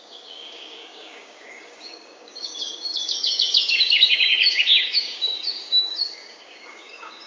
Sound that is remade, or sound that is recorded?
remade